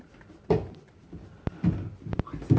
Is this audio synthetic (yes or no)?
no